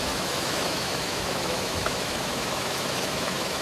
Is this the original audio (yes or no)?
no